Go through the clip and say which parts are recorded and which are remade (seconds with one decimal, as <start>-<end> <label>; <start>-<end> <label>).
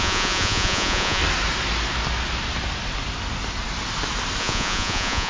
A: 0.0-1.2 remade; 1.2-4.4 recorded; 4.4-5.3 remade